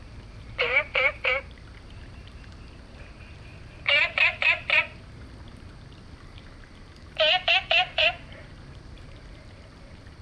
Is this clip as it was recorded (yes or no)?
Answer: no